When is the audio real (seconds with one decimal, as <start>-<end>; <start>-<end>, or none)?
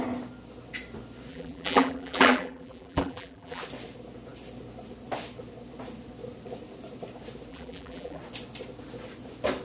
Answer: 0.0-1.3; 3.6-7.5; 8.2-9.6